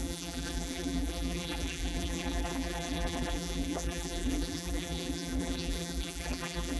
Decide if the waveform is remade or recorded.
remade